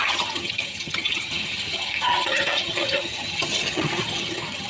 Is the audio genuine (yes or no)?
no